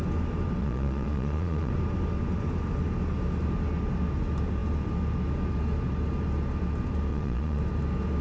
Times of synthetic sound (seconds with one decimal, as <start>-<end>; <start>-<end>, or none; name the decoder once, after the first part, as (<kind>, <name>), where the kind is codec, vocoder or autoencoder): 0.6-1.7 (vocoder, Vocos); 7.1-7.6

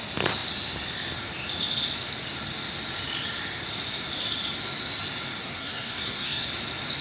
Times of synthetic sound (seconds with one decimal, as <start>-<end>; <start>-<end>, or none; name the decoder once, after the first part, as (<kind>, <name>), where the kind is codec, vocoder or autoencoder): 5.4-6.5 (codec, SNAC)

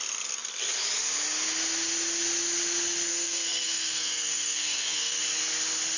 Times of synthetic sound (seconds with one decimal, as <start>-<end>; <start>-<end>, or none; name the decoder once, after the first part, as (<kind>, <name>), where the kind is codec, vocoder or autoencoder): 3.1-5.2 (codec, SNAC)

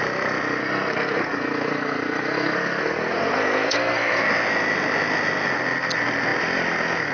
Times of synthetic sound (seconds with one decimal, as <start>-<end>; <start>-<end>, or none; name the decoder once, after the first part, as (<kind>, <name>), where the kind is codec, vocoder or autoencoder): 0.6-4.3 (codec, SNAC)